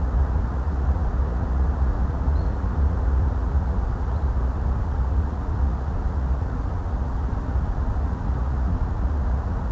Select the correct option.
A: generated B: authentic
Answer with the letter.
A